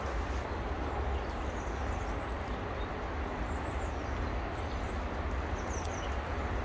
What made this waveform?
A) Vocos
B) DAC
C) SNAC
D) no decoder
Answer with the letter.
D